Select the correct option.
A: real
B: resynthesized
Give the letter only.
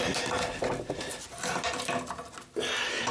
A